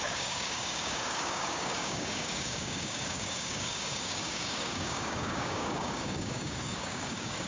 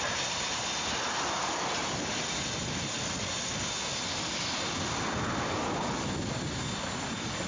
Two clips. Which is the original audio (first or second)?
second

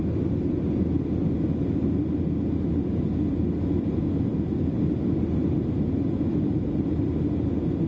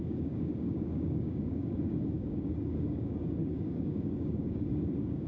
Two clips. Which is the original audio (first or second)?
first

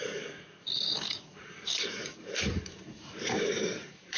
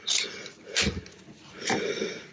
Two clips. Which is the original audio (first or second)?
second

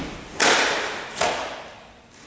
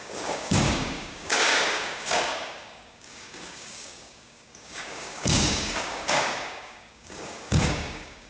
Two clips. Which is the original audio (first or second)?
first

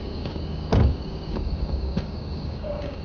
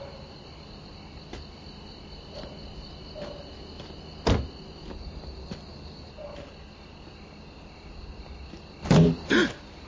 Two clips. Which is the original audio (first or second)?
second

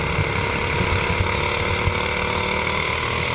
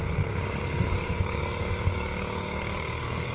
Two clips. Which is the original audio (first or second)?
first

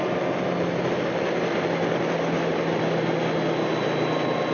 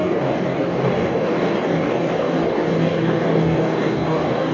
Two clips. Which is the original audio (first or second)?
first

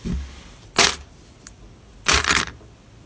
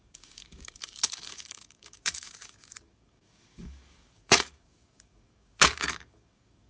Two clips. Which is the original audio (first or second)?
first